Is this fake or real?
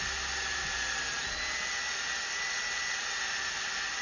real